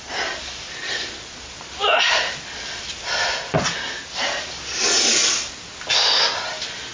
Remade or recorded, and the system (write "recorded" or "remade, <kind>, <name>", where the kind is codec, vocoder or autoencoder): recorded